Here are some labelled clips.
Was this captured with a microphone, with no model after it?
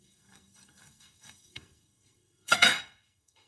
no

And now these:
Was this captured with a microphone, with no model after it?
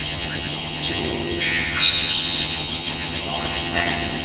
no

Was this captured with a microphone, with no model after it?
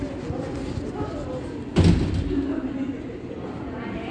yes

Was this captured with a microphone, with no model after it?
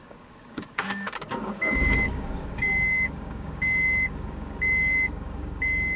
no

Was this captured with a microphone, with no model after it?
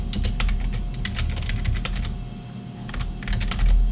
yes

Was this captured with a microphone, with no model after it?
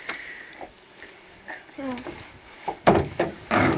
no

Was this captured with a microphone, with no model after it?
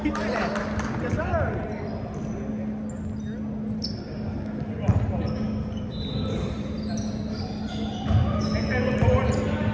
yes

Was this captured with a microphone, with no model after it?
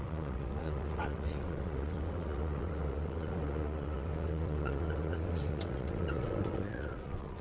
no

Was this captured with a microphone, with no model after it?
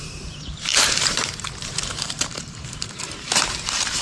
no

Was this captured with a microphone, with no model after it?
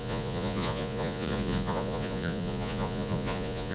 no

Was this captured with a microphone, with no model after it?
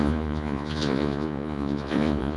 no